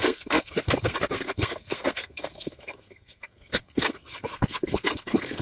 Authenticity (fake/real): fake